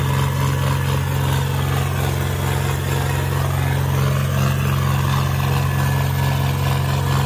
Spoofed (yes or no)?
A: no